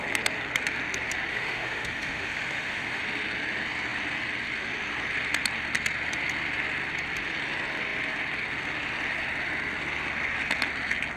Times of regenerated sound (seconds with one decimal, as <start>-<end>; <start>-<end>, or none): 1.3-3.0